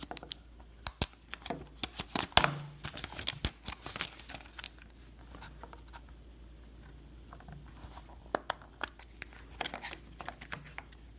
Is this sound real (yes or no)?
yes